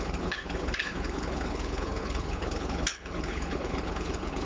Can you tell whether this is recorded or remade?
remade